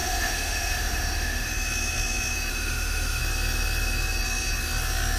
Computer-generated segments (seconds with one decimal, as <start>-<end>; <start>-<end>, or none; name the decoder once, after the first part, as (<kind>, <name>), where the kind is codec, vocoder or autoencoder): 0.0-1.5 (autoencoder, DAC-VAE); 2.5-3.2